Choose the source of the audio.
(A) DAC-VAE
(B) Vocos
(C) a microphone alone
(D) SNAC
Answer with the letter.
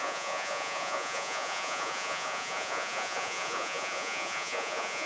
B